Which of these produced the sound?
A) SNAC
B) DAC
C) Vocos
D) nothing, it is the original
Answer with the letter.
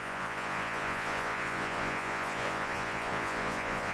C